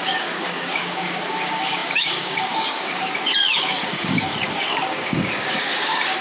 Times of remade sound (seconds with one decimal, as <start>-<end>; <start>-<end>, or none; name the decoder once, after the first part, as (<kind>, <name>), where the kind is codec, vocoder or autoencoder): 0.0-6.2 (codec, DAC)